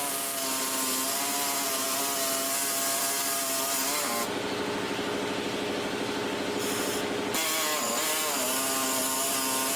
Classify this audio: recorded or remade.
recorded